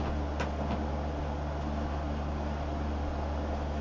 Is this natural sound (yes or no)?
yes